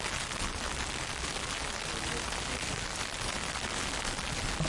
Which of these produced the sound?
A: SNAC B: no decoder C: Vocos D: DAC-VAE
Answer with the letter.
B